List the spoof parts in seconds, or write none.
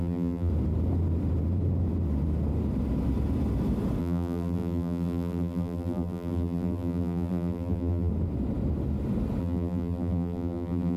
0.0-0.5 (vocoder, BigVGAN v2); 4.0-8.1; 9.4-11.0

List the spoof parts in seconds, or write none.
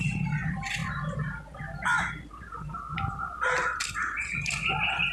none